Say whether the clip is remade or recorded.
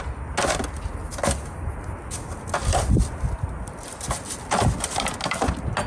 recorded